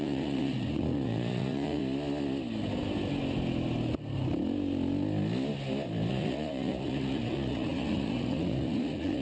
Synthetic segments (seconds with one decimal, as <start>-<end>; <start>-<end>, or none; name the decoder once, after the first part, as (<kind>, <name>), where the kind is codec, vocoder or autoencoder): 0.0-1.8 (vocoder, Vocos); 6.1-9.2